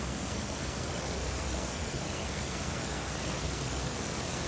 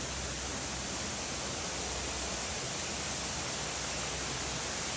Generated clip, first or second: first